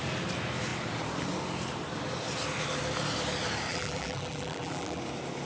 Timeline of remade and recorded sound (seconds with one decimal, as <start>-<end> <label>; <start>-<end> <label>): 0.0-3.7 recorded; 3.7-5.0 remade; 5.0-5.5 recorded